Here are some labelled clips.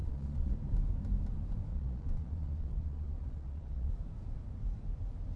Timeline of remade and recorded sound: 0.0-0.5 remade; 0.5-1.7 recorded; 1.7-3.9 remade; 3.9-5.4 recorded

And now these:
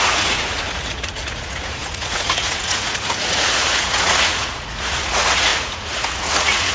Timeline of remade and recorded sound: 0.0-6.7 remade